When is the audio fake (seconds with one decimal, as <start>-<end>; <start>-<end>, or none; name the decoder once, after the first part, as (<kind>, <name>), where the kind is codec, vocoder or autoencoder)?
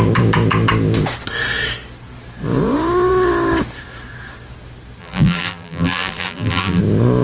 5.0-6.8 (vocoder, BigVGAN v2)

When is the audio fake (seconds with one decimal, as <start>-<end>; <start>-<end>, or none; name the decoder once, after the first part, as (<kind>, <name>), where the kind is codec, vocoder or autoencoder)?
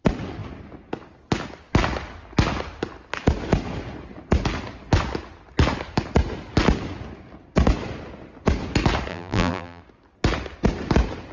9.1-9.8 (vocoder, BigVGAN v2)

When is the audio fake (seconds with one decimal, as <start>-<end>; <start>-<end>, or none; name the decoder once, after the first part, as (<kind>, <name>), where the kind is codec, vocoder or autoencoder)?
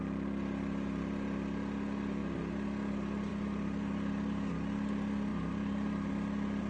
3.3-4.5 (vocoder, BigVGAN v2); 5.3-6.1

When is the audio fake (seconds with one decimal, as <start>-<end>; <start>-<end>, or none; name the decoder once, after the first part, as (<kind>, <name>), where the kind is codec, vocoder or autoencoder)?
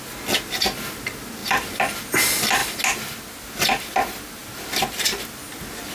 none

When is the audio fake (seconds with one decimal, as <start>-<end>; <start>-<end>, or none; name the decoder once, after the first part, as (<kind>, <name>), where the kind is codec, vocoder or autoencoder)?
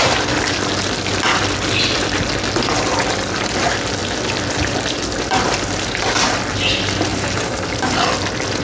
7.1-7.9 (vocoder, BigVGAN v2)